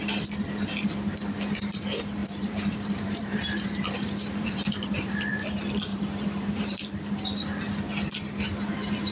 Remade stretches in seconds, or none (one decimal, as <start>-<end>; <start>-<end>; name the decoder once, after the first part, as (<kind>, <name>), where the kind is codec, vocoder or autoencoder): 2.2-5.2 (vocoder, BigVGAN v2); 5.9-7.0